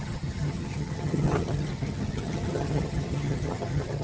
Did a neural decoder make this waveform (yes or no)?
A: yes